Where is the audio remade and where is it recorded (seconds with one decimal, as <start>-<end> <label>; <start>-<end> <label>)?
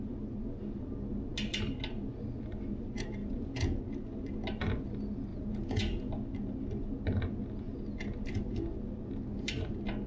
0.0-3.2 recorded; 3.2-3.8 remade; 3.8-5.3 recorded; 5.3-6.1 remade; 6.1-10.1 recorded